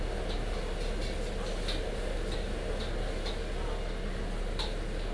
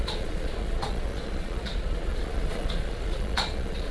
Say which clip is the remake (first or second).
second